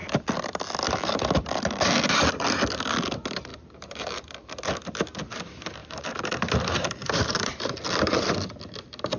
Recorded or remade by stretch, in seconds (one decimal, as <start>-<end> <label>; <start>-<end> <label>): 0.0-3.5 recorded; 3.5-4.2 remade; 4.2-5.8 recorded; 5.8-6.3 remade; 6.3-7.0 recorded; 7.0-7.7 remade; 7.7-9.2 recorded